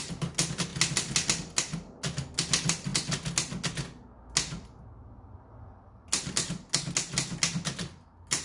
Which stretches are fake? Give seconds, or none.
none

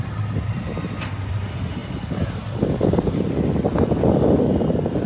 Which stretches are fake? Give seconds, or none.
none

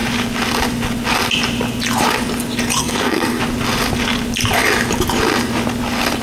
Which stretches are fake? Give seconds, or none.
2.8-3.4 (codec, SNAC)

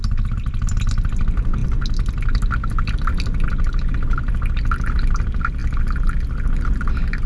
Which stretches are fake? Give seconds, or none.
none

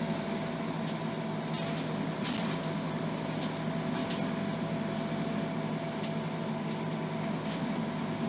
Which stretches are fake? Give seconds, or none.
none

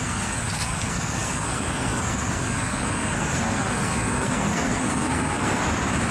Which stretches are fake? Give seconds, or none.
0.0-5.6 (codec, SNAC)

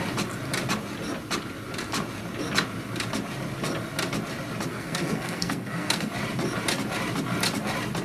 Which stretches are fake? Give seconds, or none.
4.7-6.1 (codec, SNAC)

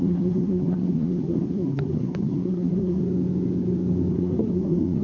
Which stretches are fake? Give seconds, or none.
0.0-3.0 (codec, SNAC); 4.1-5.0